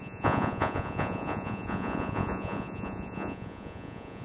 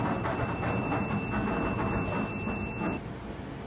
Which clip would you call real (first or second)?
second